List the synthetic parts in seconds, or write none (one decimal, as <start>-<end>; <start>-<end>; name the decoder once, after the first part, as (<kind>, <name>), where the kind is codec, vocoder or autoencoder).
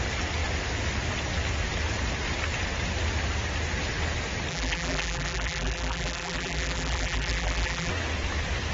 4.5-7.9 (vocoder, BigVGAN v2)